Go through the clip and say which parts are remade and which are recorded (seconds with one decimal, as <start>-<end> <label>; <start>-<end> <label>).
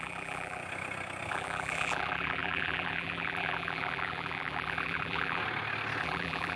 0.0-0.6 remade; 0.6-1.3 recorded; 1.3-5.4 remade; 5.4-6.0 recorded; 6.0-6.6 remade